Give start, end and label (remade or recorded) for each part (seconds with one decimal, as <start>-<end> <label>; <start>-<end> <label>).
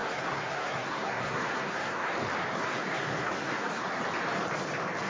0.0-2.1 remade; 2.1-2.5 recorded; 2.5-4.0 remade; 4.0-5.1 recorded